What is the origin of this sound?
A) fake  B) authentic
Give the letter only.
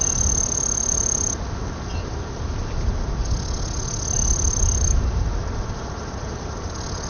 B